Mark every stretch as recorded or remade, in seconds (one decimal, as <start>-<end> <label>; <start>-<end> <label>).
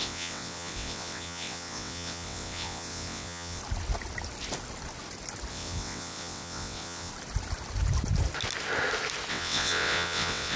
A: 0.0-3.6 remade; 3.6-5.5 recorded; 5.5-7.1 remade; 7.1-9.3 recorded; 9.3-10.6 remade